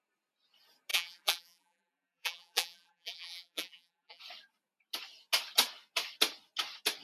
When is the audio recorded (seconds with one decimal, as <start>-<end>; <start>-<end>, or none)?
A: 0.0-0.9; 4.2-7.0